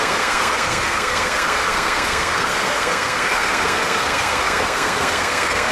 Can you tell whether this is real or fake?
fake